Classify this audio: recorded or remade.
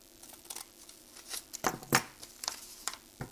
recorded